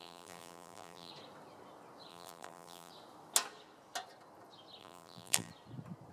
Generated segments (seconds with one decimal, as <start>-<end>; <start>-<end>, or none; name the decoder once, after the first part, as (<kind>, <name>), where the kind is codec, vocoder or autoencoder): 0.0-1.1 (vocoder, BigVGAN v2); 2.1-2.9; 4.8-5.5